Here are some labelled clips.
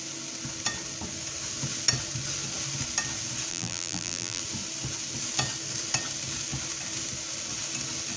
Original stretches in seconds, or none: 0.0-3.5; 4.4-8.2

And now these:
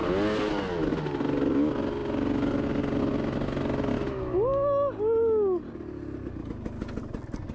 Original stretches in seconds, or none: 0.0-7.5

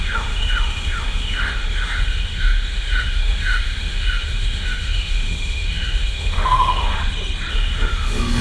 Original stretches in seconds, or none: 7.0-7.5

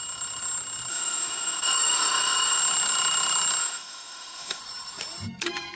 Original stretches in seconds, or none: 0.0-0.9; 2.6-3.6; 4.6-5.7